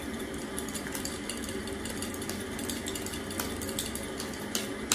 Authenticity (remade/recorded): recorded